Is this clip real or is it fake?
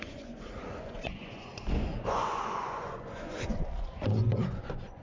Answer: fake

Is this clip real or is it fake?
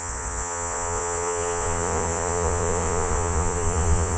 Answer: fake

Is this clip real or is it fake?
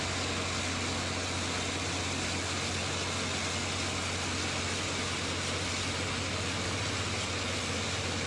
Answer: real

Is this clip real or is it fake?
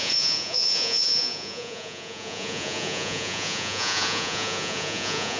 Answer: fake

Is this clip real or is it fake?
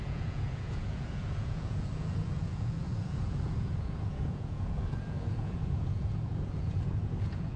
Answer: fake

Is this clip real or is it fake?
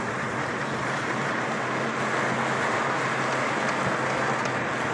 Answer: real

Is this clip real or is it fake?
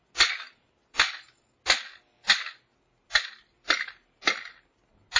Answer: real